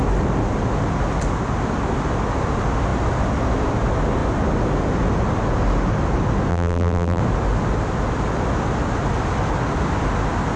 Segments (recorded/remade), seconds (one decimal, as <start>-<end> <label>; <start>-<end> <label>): 0.0-6.5 recorded; 6.5-7.2 remade; 7.2-10.6 recorded